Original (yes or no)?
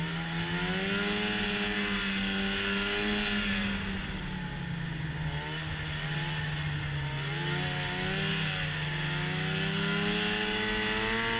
yes